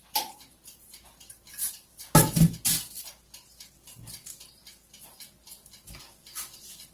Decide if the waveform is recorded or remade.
recorded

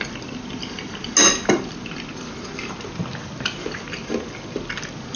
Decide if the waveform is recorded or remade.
recorded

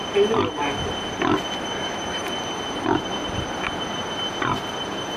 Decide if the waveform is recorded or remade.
recorded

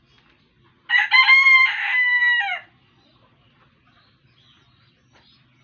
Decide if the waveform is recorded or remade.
recorded